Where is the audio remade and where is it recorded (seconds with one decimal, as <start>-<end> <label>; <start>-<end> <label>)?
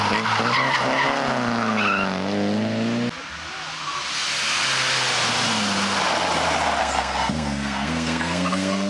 0.0-6.8 recorded; 6.8-8.9 remade